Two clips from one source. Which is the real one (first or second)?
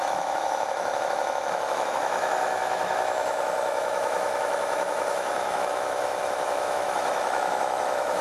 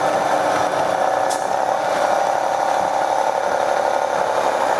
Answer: second